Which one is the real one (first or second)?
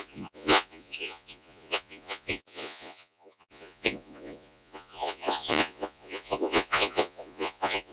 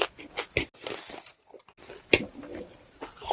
second